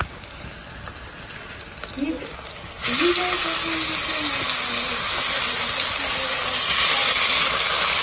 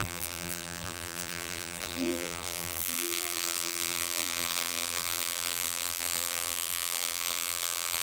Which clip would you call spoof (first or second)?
second